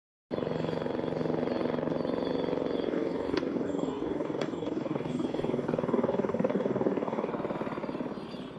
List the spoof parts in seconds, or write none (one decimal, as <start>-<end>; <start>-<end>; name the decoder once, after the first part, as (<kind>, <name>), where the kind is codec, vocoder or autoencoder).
2.9-7.3 (codec, DAC)